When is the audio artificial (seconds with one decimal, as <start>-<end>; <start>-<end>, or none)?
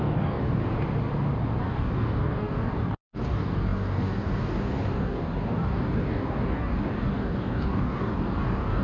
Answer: 0.0-0.6; 1.6-8.8